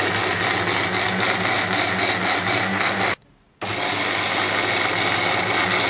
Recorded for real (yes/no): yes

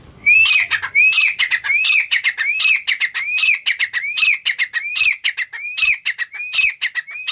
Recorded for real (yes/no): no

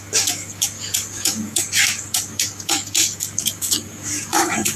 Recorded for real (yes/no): no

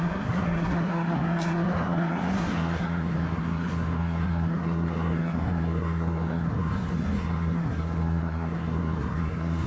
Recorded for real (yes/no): no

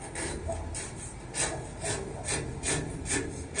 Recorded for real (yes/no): yes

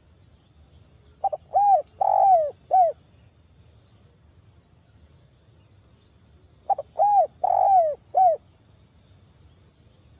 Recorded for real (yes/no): yes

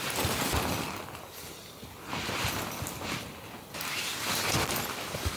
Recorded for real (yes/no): yes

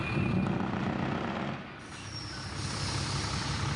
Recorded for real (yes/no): yes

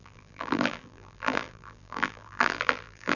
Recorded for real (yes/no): no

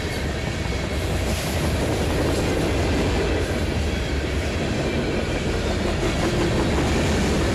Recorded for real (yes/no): yes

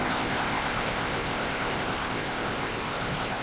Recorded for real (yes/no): no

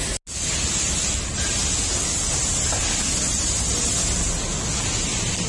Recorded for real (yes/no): yes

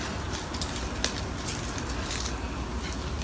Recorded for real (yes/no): yes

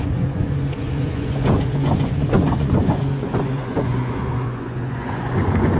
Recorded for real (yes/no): no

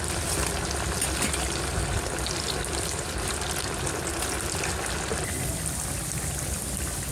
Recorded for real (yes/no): yes